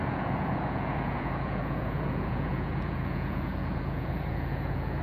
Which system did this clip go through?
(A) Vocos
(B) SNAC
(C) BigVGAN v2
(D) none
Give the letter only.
A